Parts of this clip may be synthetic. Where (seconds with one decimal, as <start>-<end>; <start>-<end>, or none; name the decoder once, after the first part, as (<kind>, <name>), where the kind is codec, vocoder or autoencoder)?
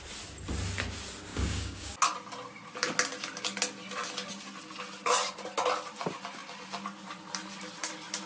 1.3-1.9 (codec, DAC)